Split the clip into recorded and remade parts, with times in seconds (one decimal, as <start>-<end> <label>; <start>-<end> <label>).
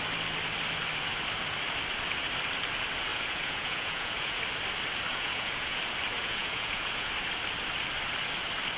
0.0-3.1 recorded; 3.1-4.4 remade; 4.4-5.1 recorded; 5.1-5.8 remade; 5.8-6.2 recorded; 6.2-7.1 remade; 7.1-8.8 recorded